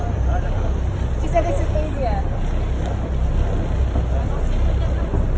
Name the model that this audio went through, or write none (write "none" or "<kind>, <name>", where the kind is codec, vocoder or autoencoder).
none